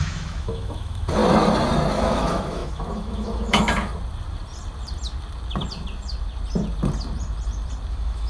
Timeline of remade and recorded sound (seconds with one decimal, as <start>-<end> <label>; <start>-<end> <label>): 0.0-1.2 remade; 1.2-1.9 recorded; 1.9-3.9 remade; 3.9-7.9 recorded; 7.9-8.3 remade